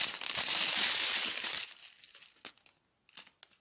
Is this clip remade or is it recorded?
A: recorded